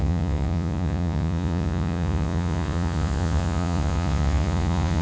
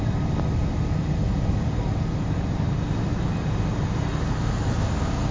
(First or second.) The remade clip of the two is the first